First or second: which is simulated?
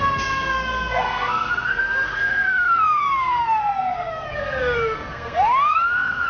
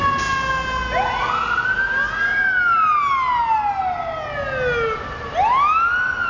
first